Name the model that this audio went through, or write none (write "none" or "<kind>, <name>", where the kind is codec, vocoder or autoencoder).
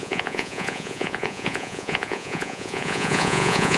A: vocoder, Vocos